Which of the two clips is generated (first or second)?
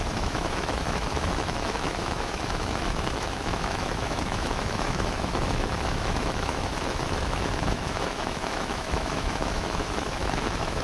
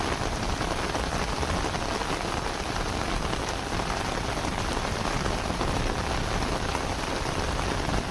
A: first